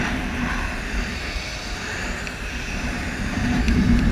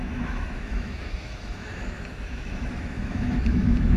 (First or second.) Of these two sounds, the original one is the first